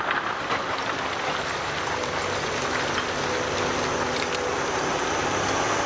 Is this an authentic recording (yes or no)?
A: yes